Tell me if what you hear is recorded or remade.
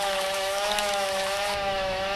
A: remade